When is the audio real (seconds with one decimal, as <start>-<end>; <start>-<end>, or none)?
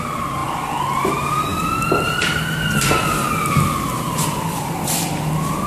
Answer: 0.0-5.7